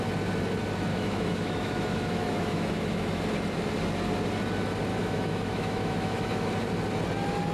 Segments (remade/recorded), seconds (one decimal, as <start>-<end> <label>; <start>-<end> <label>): 0.0-0.9 recorded; 0.9-3.2 remade; 3.2-4.9 recorded; 4.9-6.5 remade; 6.5-7.5 recorded